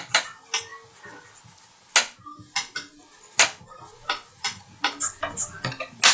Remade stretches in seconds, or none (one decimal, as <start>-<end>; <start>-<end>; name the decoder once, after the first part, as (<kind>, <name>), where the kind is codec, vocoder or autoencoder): none